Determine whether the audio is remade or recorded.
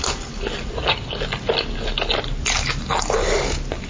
recorded